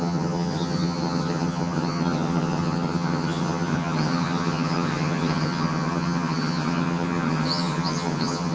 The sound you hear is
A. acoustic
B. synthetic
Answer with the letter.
B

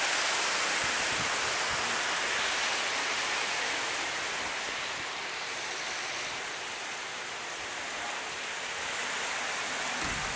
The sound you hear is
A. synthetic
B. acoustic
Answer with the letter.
B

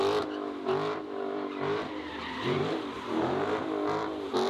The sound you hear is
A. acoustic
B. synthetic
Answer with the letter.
B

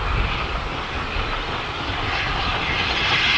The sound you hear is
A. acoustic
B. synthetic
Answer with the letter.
A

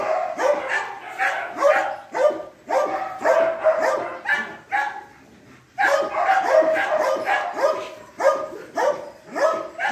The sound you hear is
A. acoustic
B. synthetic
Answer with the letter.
A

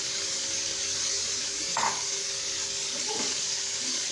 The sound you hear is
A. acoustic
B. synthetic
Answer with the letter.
B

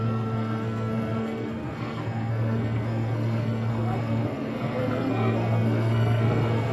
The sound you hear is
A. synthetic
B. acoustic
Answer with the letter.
A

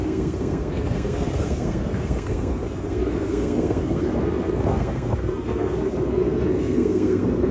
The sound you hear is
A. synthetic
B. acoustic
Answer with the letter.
A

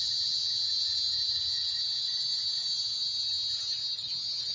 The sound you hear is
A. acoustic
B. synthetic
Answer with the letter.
A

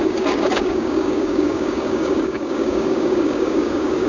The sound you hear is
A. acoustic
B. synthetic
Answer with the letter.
B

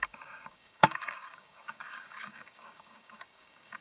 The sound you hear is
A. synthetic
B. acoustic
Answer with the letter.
A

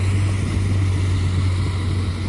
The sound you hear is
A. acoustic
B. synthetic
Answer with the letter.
A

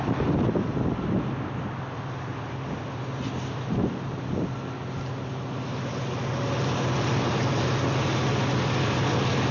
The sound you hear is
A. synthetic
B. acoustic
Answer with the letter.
B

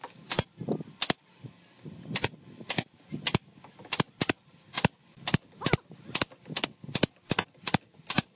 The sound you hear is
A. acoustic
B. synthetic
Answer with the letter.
A